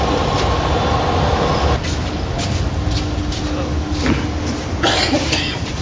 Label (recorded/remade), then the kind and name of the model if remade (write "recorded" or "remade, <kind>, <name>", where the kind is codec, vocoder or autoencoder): recorded